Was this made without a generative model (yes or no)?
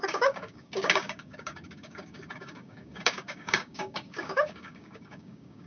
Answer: no